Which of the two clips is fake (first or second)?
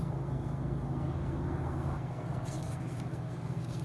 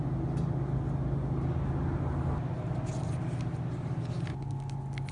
first